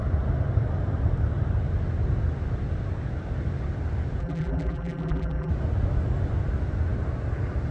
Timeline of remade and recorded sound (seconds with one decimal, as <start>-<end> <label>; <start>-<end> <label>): 0.0-4.2 recorded; 4.2-5.5 remade; 5.5-7.7 recorded

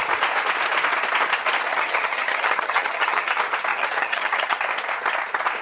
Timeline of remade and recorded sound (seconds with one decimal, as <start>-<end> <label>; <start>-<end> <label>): 0.0-1.7 recorded; 1.7-3.3 remade; 3.3-3.7 recorded; 3.7-4.6 remade; 4.6-5.6 recorded

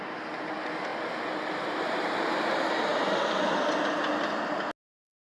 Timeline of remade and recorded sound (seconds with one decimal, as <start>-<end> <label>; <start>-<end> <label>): 0.0-5.3 recorded

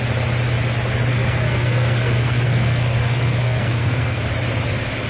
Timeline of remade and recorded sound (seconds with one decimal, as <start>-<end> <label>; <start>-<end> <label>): 0.0-1.1 recorded; 1.1-4.2 remade; 4.2-5.1 recorded

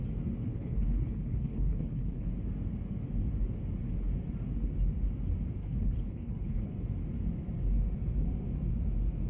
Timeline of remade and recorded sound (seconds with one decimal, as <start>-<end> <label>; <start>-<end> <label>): 0.0-0.4 recorded; 0.4-2.3 remade; 2.3-5.6 recorded; 5.6-6.7 remade; 6.7-9.3 recorded

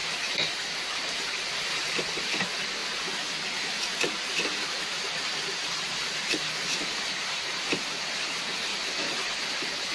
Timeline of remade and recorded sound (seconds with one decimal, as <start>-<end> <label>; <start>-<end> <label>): 0.0-2.8 remade; 2.8-5.7 recorded; 5.7-9.9 remade

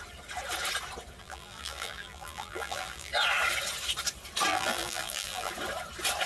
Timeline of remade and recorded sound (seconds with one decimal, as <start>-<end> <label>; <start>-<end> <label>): 0.0-1.2 recorded; 1.2-3.1 remade; 3.1-4.5 recorded; 4.5-5.5 remade; 5.5-6.3 recorded

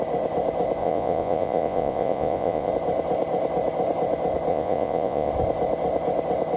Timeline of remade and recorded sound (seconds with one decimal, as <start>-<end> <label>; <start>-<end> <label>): 0.0-0.8 recorded; 0.8-2.7 remade; 2.7-4.5 recorded; 4.5-5.3 remade; 5.3-6.6 recorded